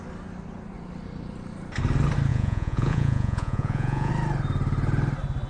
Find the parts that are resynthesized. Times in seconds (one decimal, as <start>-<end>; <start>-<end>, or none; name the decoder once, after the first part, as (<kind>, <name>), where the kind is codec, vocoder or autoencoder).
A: 2.3-4.1 (vocoder, Vocos)